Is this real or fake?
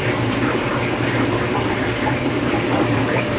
fake